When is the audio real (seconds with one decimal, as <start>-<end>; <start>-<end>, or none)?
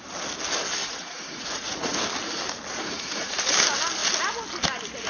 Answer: 0.0-0.8; 2.0-2.8; 3.3-5.1